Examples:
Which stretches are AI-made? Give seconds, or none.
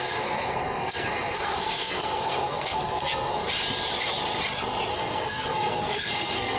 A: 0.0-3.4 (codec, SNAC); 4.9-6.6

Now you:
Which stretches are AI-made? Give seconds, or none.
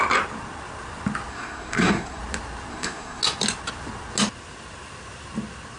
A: 1.3-2.2 (codec, SNAC); 2.7-3.2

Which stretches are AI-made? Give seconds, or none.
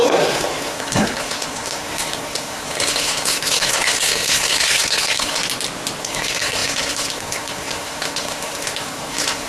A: 0.0-5.4 (codec, SNAC); 6.0-9.5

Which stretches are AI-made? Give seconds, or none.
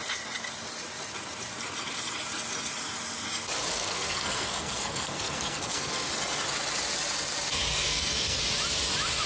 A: 3.7-6.1 (codec, SNAC); 7.7-8.4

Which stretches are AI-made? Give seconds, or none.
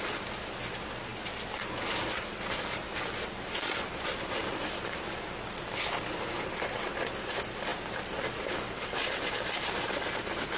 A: none